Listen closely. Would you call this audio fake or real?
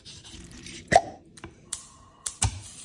fake